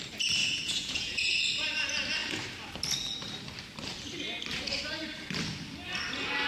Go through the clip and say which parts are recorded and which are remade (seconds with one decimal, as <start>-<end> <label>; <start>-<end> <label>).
0.0-0.4 recorded; 0.4-1.4 remade; 1.4-6.5 recorded